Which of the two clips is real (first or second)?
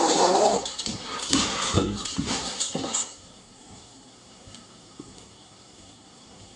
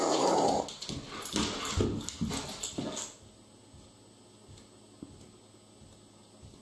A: second